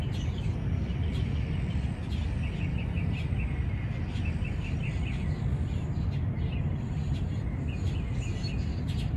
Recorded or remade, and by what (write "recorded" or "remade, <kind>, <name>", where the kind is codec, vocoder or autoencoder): recorded